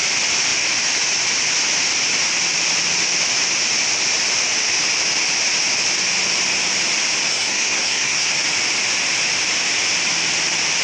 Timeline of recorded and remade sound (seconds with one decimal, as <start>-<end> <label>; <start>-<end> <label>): 0.0-7.3 recorded; 7.3-8.3 remade; 8.3-10.8 recorded